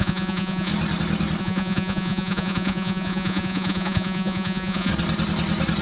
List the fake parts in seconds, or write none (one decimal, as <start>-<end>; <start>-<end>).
0.0-0.7; 1.4-4.9